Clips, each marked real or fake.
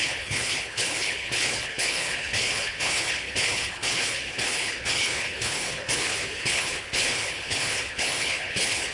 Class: fake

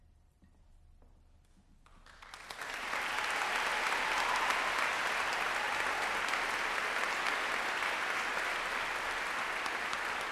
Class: real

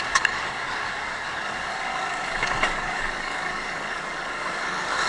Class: fake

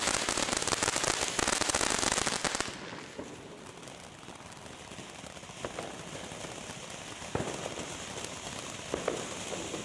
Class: real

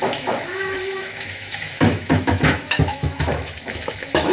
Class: fake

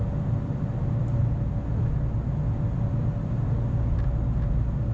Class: real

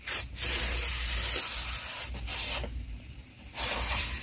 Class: fake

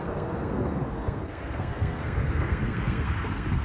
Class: fake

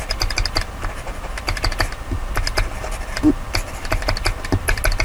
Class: real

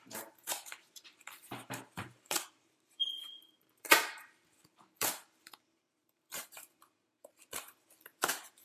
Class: fake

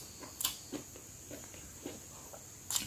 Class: real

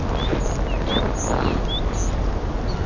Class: real